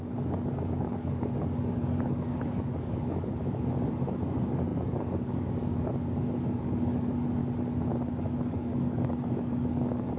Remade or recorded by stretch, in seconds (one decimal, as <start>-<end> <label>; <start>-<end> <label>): 0.0-7.4 remade; 7.4-8.2 recorded; 8.2-10.2 remade